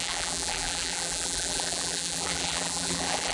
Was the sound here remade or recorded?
remade